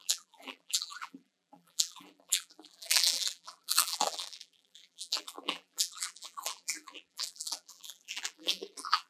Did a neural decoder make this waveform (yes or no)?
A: yes